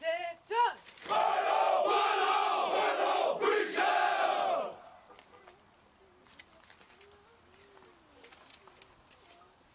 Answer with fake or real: real